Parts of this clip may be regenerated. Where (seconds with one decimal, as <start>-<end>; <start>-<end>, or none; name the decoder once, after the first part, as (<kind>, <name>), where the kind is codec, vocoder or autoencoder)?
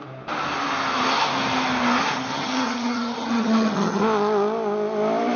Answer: 2.3-4.0 (vocoder, HiFi-GAN)